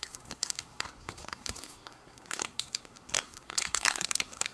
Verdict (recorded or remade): remade